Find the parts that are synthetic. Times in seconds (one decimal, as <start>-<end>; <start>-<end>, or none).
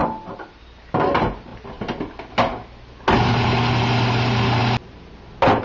none